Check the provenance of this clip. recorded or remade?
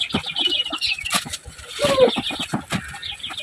recorded